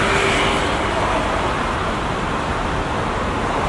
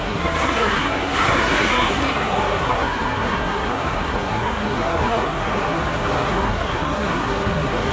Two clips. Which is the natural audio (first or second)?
first